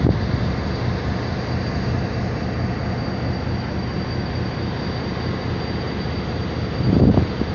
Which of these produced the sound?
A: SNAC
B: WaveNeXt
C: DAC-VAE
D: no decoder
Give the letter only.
D